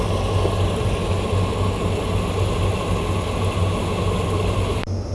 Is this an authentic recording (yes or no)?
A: yes